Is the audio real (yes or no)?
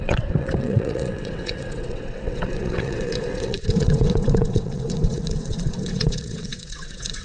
no